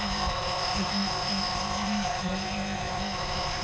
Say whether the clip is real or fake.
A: fake